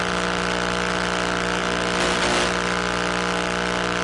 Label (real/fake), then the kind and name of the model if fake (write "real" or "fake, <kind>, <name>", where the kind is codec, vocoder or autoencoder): real